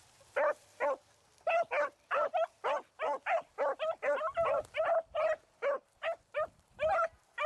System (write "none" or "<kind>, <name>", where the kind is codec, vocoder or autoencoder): none